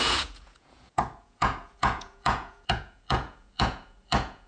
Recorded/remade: remade